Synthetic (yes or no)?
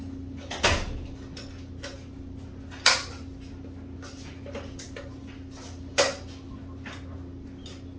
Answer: no